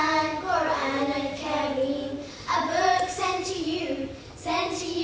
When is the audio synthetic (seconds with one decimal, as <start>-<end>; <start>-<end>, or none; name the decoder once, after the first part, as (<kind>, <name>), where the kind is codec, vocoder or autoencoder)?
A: 0.8-1.6 (autoencoder, DAC-VAE); 2.9-3.8